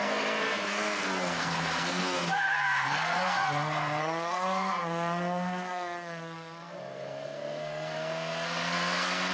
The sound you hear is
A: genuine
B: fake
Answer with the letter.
B